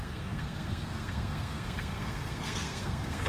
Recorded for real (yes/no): no